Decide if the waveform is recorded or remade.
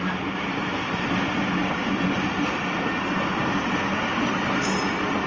recorded